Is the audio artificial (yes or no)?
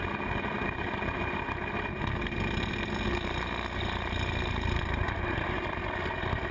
no